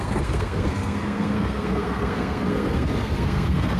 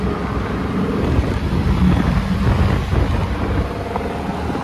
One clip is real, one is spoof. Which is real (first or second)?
second